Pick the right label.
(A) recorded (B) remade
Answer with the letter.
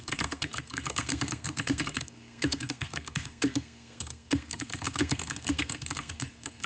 B